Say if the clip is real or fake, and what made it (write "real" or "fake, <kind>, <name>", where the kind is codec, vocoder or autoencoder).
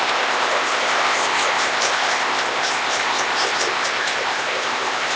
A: fake, codec, ZipCodec